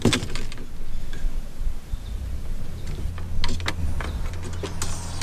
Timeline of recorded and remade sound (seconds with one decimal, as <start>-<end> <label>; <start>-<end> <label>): 0.0-1.0 recorded; 1.0-3.1 remade; 3.1-3.8 recorded; 3.8-4.3 remade; 4.3-5.2 recorded